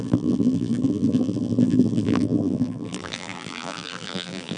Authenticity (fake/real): fake